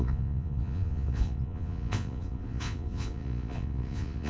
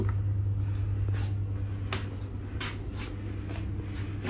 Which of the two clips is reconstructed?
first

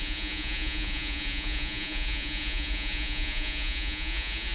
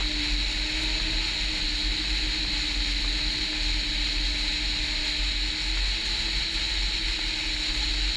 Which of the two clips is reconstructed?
first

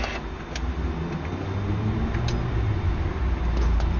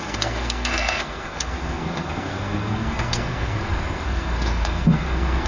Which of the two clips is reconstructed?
second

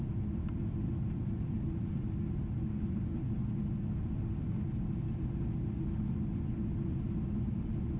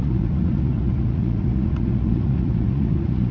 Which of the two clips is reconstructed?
second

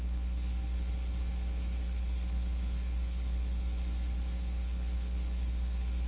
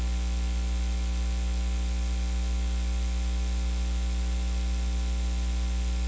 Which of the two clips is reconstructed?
first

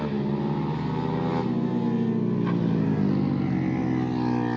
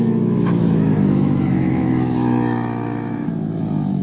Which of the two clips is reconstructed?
second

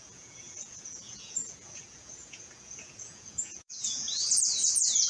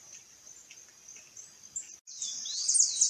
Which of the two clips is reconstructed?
first